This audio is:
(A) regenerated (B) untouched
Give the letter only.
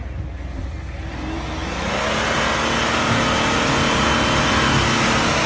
B